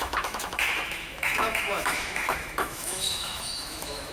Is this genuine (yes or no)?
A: no